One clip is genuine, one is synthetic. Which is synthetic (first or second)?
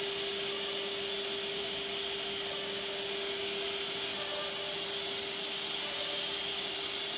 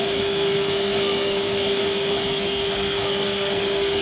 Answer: second